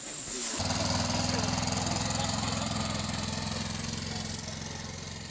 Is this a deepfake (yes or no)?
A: no